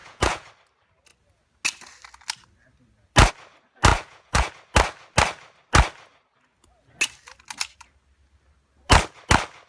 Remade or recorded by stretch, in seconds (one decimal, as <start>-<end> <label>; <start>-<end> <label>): 0.0-0.5 remade; 0.5-3.9 recorded; 3.9-4.5 remade; 4.5-9.7 recorded